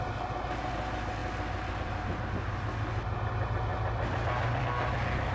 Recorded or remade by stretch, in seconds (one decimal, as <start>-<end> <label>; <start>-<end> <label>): 0.0-5.3 recorded